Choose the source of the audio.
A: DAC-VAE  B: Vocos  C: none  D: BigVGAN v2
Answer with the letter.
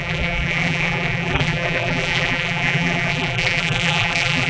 D